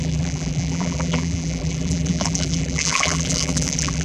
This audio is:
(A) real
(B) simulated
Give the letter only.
B